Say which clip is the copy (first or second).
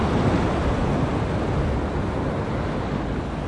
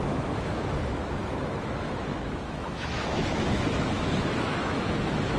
second